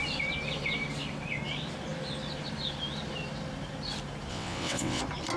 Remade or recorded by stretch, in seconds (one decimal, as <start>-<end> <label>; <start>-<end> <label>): 0.0-4.3 recorded; 4.3-5.0 remade; 5.0-5.4 recorded